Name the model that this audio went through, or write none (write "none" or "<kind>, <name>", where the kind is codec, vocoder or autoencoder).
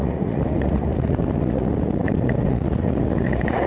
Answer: vocoder, Vocos